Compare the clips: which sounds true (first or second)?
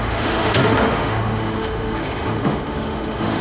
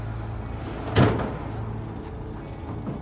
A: second